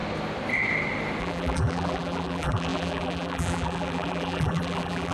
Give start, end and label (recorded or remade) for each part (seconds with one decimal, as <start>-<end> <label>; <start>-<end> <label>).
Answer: 0.0-1.2 recorded; 1.2-5.1 remade